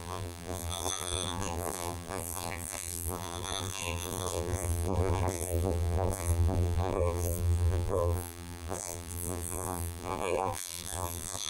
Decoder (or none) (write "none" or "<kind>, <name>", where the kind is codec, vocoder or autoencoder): vocoder, BigVGAN v2